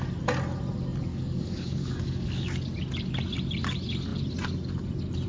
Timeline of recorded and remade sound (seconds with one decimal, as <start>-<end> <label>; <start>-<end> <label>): 0.0-1.1 recorded; 1.1-2.5 remade; 2.5-5.3 recorded